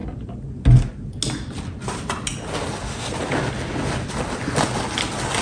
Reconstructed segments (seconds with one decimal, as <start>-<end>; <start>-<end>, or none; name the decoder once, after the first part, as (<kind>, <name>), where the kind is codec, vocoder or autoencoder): none